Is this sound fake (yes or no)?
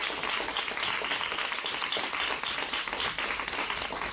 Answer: no